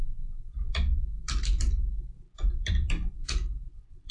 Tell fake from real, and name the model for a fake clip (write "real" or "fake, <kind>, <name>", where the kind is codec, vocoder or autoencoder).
fake, vocoder, BigVGAN v2